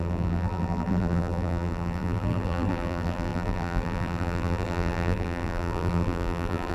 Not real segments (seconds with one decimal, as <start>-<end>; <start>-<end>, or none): 0.0-6.7